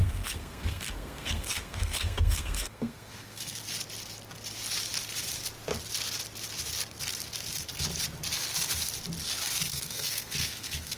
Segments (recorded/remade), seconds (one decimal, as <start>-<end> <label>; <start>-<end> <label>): 0.0-3.6 remade; 3.6-9.7 recorded; 9.7-11.0 remade

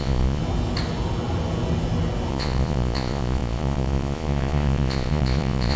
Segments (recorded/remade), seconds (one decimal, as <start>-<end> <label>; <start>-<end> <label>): 0.0-0.4 remade; 0.4-2.3 recorded; 2.3-5.8 remade

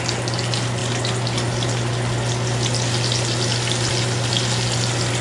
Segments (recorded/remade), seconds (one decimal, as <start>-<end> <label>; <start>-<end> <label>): 0.0-5.2 recorded

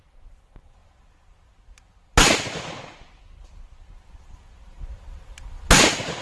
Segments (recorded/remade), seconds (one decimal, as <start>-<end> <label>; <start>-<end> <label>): 0.0-6.2 recorded

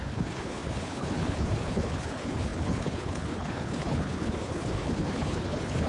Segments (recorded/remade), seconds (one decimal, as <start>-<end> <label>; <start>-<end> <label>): 0.0-5.9 remade